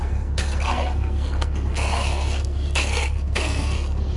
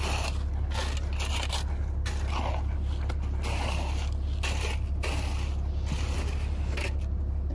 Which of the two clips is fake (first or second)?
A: first